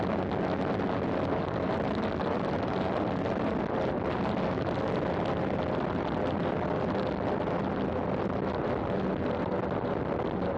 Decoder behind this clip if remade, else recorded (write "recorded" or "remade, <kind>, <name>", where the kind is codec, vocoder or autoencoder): recorded